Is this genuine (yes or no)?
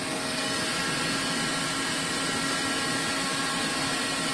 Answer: yes